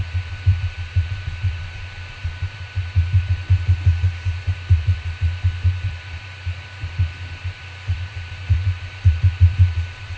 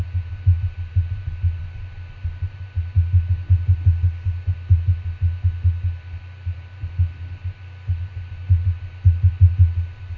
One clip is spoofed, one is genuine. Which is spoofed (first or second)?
first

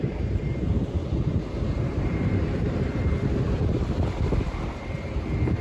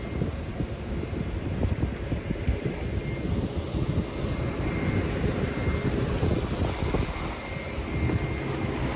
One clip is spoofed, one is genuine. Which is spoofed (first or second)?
first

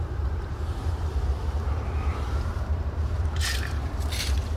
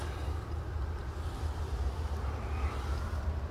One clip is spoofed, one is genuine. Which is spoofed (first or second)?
first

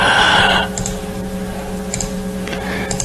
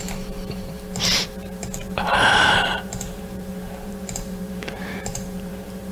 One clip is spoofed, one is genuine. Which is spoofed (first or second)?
second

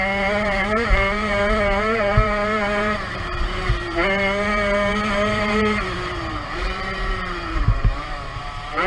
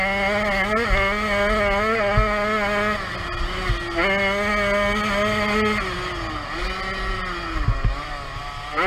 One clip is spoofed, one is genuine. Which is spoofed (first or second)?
first